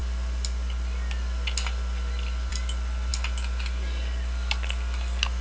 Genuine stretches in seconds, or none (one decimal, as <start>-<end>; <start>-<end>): 0.0-5.4